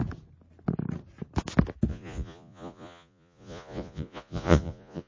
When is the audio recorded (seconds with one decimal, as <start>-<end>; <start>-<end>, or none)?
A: 0.0-1.9